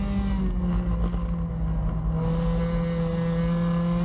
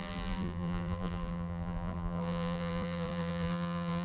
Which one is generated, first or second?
second